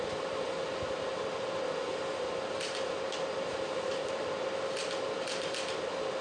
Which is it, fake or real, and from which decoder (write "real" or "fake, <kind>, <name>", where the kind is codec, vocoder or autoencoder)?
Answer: real